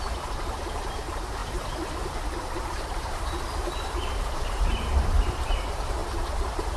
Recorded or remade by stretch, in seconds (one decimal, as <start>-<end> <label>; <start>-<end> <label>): 0.0-1.4 recorded; 1.4-5.5 remade; 5.5-6.0 recorded; 6.0-6.8 remade